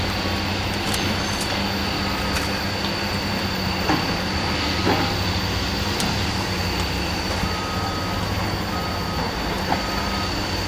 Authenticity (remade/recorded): recorded